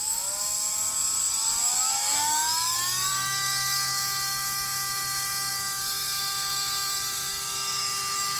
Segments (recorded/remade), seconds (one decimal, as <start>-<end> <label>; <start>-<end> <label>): 0.0-8.4 remade